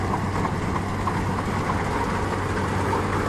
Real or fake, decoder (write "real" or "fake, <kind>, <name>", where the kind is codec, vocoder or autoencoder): real